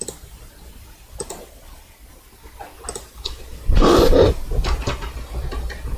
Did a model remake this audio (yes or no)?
no